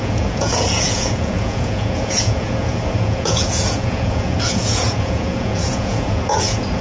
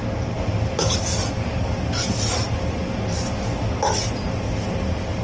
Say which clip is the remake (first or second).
first